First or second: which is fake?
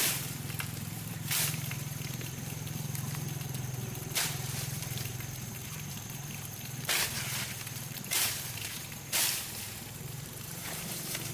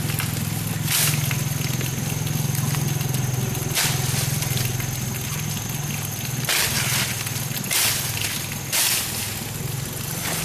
first